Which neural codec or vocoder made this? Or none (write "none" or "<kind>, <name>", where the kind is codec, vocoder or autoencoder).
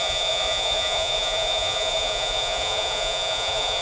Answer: vocoder, Vocos